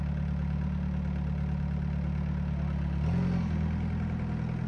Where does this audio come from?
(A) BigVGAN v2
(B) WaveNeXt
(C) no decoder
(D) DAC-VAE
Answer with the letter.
C